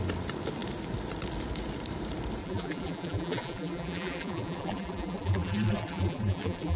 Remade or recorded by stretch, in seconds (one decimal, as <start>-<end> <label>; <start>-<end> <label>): 0.0-2.4 recorded; 2.4-6.8 remade